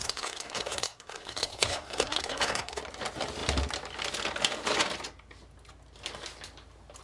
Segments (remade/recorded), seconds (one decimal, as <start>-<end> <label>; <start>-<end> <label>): 0.0-2.8 remade; 2.8-7.0 recorded